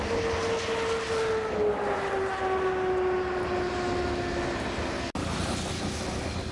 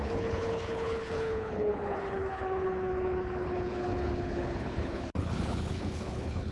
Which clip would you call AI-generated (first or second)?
second